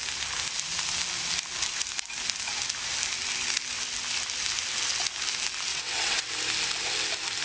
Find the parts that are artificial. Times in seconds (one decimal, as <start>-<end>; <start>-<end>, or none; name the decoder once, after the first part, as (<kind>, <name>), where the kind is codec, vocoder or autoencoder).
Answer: 5.7-6.3 (vocoder, WaveNeXt)